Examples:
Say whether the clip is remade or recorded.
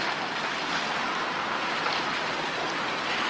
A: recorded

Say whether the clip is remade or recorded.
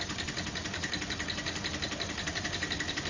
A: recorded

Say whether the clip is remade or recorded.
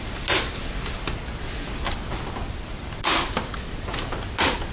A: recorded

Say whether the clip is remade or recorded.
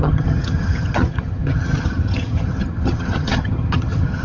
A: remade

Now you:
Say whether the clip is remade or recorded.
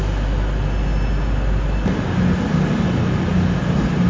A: recorded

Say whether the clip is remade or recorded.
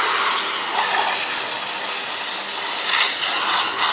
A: recorded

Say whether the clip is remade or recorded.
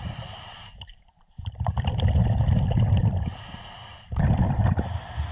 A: recorded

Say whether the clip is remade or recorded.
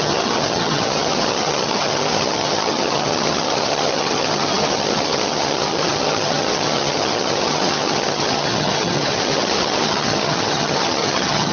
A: remade